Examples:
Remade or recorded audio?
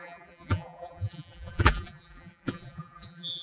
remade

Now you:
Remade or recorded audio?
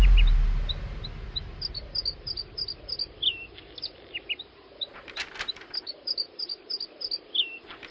recorded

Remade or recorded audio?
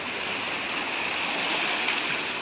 recorded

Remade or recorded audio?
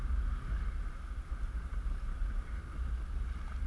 recorded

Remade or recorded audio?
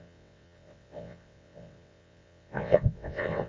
remade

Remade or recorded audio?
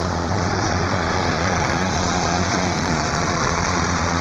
remade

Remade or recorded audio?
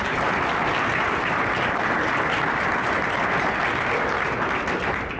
recorded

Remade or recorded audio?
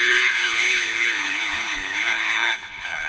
remade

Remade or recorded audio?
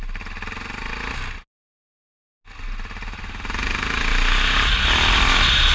recorded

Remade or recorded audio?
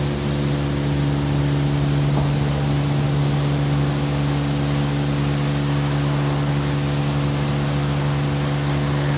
recorded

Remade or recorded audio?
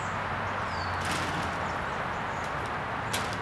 recorded